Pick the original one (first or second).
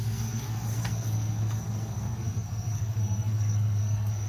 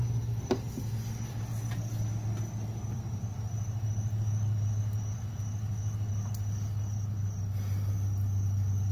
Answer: second